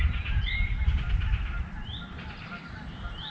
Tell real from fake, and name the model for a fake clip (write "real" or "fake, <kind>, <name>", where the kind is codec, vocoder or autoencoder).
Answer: real